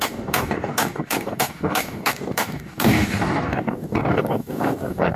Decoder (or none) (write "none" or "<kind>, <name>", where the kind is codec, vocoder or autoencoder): codec, DAC